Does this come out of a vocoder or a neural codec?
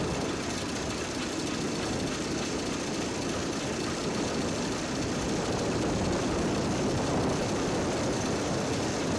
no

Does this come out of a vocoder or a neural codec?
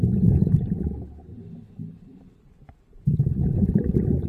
no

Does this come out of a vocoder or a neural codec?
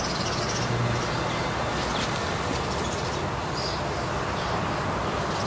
no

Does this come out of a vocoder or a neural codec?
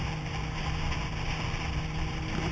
no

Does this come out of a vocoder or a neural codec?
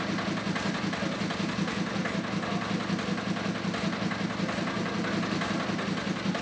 no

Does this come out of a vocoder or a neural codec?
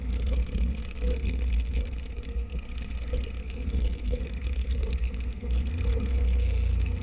yes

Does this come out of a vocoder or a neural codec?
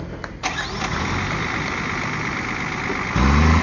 no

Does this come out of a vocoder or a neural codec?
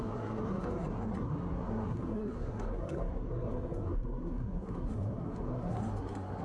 yes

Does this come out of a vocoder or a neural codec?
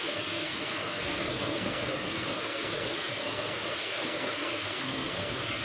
yes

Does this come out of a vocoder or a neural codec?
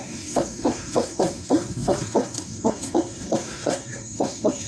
yes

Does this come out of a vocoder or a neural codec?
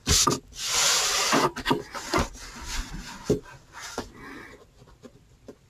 no